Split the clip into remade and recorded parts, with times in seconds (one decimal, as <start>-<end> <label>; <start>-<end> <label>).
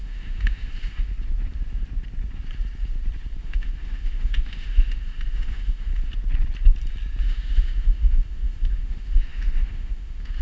0.0-1.1 remade; 1.1-3.4 recorded; 3.4-5.9 remade; 5.9-7.2 recorded; 7.2-10.4 remade